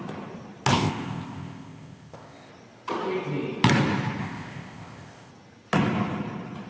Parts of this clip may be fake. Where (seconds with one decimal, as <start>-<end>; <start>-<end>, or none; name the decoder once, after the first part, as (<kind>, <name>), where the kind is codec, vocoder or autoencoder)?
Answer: 0.7-2.5 (codec, ZipCodec); 4.2-5.3